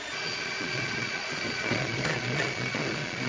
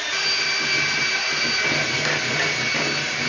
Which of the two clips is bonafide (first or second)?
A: second